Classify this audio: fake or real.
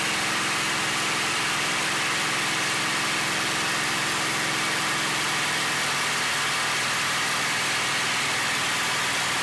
real